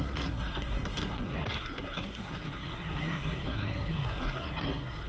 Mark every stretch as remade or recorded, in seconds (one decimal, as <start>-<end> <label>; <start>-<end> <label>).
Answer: 0.0-5.1 remade